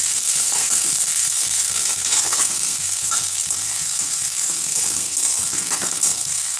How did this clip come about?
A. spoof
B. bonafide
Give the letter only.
A